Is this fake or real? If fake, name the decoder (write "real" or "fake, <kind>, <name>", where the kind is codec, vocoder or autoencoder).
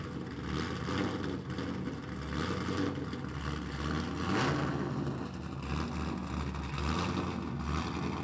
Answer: real